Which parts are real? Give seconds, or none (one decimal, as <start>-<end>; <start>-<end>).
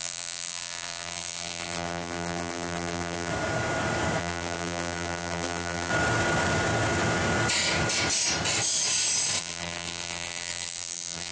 3.3-4.2; 5.9-9.4